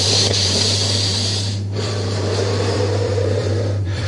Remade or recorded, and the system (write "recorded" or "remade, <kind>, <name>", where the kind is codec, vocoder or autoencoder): remade, vocoder, BigVGAN v2